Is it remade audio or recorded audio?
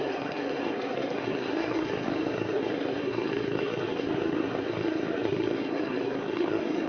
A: remade